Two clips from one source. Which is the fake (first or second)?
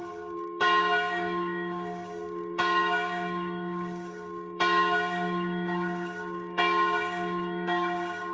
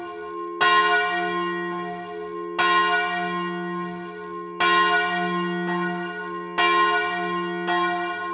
first